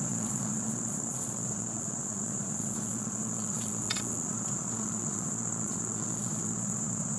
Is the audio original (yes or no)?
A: no